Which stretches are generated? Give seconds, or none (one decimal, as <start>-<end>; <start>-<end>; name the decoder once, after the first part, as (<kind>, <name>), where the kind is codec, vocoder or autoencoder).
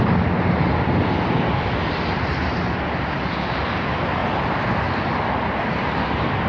none